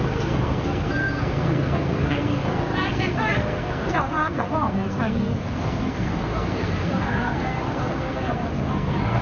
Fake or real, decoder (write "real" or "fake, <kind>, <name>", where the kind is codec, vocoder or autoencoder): fake, codec, SNAC